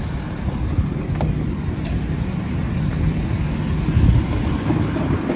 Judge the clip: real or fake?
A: real